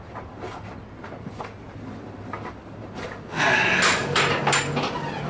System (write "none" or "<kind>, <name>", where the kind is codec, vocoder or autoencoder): none